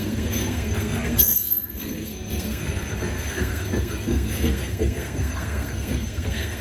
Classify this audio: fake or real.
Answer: fake